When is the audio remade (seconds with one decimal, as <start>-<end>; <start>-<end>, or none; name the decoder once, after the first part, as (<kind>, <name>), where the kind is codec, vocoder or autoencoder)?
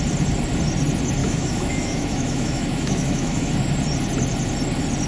1.2-3.5 (autoencoder, DAC-VAE)